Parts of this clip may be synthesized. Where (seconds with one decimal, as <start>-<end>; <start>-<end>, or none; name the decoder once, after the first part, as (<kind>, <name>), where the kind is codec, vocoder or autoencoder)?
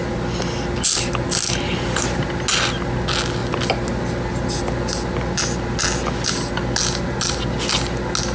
none